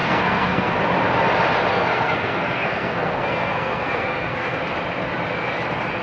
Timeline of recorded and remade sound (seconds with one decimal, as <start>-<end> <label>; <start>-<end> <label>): 0.0-0.7 remade; 0.7-1.7 recorded; 1.7-4.6 remade; 4.6-6.0 recorded